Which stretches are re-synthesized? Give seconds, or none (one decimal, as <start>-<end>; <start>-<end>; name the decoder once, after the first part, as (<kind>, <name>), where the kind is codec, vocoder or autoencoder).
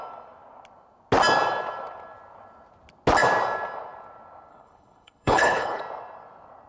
4.5-5.8 (codec, HILCodec)